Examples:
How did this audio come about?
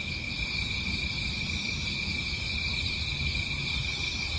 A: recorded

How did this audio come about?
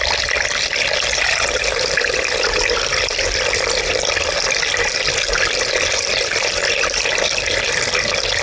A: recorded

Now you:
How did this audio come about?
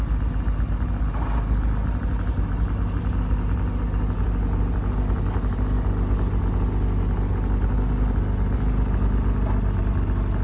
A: recorded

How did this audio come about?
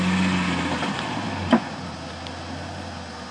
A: recorded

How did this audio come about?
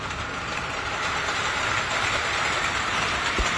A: remade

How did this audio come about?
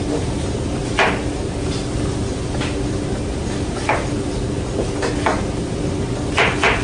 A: recorded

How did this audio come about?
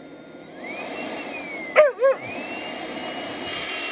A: recorded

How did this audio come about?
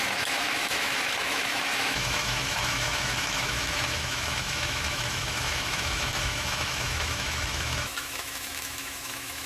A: remade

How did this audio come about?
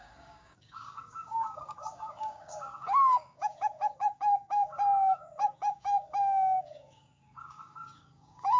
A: remade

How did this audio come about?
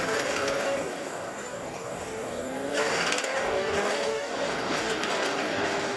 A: remade